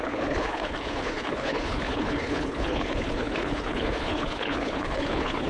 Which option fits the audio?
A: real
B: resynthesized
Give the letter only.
B